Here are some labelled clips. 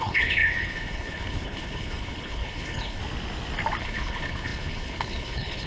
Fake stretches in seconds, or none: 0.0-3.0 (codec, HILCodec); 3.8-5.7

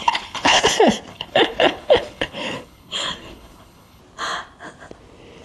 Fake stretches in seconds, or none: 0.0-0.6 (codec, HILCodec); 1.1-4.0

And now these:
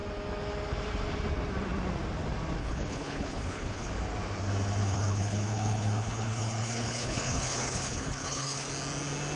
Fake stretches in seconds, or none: 2.6-3.9 (codec, HILCodec); 4.8-8.7

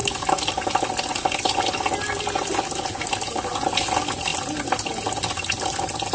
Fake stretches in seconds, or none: none

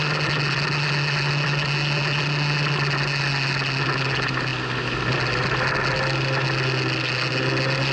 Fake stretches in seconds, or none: none

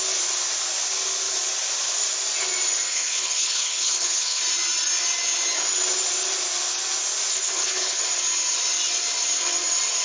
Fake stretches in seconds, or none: 2.9-4.4 (codec, HILCodec); 7.3-8.0